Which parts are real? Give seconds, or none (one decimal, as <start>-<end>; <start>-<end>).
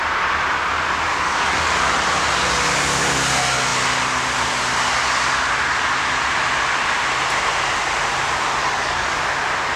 0.0-1.1; 1.9-8.6; 9.2-9.8